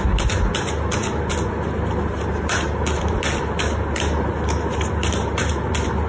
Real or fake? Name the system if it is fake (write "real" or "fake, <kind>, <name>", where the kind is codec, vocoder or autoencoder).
real